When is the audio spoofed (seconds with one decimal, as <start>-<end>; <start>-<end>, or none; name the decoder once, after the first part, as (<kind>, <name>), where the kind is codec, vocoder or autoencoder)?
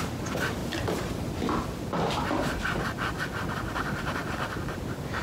0.0-0.6 (vocoder, BigVGAN v2); 3.7-4.2